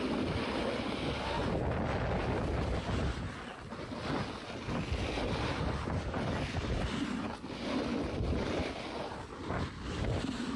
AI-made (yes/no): no